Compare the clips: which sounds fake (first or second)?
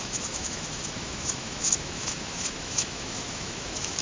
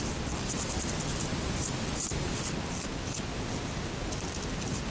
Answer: first